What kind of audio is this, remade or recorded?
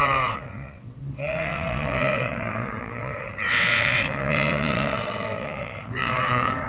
remade